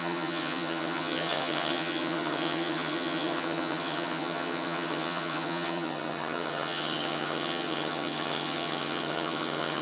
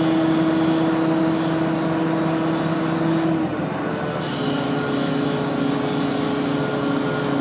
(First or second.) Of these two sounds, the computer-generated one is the first